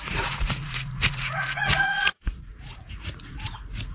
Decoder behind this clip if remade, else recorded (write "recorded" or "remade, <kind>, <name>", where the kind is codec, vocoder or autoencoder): remade, vocoder, Vocos